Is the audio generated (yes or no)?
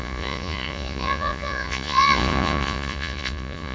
yes